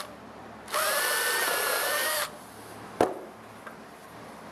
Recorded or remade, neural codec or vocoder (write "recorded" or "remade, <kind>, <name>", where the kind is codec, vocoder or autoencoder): recorded